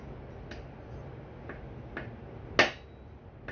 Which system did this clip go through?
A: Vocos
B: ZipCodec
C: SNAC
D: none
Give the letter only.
D